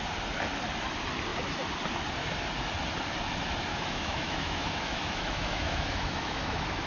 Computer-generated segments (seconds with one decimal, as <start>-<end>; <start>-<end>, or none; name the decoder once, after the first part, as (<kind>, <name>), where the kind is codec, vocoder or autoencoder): 3.7-6.9 (autoencoder, DAC-VAE)